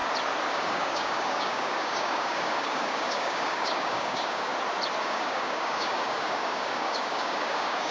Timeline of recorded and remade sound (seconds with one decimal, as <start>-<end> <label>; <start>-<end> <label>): 0.0-0.5 recorded; 0.5-4.5 remade; 4.5-5.0 recorded; 5.0-7.9 remade